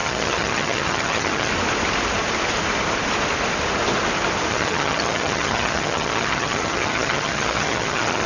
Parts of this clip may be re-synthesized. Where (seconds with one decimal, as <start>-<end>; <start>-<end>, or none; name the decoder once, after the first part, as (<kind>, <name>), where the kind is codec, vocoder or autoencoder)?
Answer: 0.0-1.5 (vocoder, HiFi-GAN); 4.5-8.3